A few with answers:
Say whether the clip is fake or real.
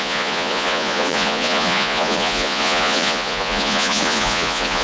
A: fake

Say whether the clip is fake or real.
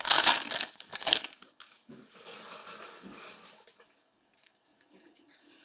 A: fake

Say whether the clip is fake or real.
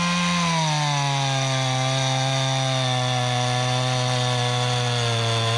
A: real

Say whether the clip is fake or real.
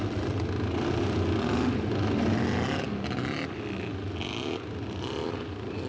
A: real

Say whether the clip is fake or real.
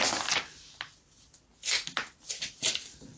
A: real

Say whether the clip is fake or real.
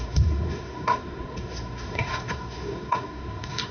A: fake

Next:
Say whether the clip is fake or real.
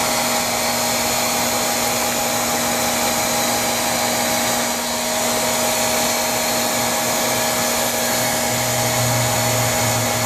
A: real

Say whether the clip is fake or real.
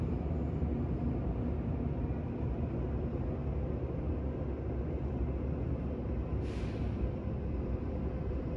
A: real